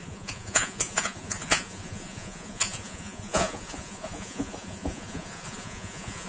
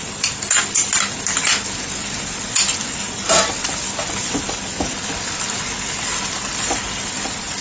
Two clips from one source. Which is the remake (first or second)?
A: first